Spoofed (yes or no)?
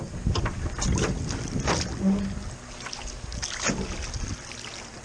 no